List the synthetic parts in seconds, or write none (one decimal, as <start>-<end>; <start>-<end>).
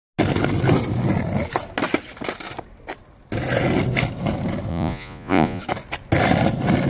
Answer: 4.7-5.6